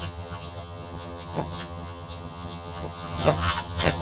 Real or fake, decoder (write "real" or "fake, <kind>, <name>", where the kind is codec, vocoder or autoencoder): fake, vocoder, HiFi-GAN